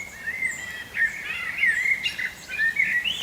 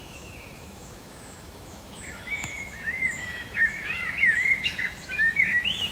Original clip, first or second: first